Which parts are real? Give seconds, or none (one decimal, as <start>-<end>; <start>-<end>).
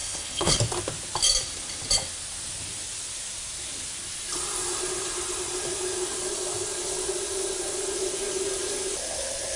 0.6-9.6